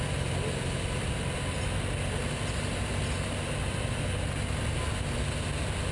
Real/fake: real